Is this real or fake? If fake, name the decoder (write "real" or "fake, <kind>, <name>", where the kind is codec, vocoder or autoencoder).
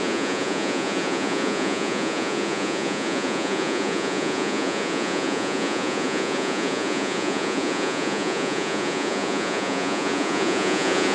fake, vocoder, Vocos